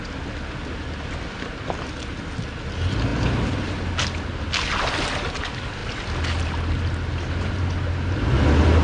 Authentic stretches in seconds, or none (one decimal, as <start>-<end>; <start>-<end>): 0.0-8.8